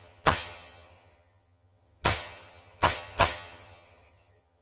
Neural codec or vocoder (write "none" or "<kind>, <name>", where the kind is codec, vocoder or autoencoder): vocoder, HiFi-GAN